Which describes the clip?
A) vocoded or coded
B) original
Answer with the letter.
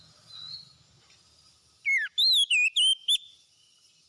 B